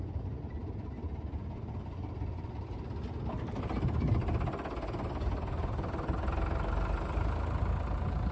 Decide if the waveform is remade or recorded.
recorded